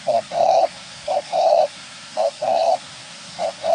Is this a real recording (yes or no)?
no